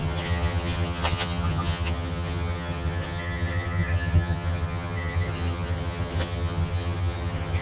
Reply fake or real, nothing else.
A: fake